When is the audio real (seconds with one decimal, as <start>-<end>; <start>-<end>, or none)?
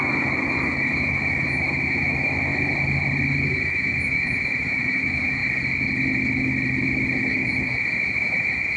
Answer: 2.5-3.4; 5.4-7.3